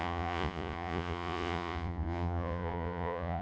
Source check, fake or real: fake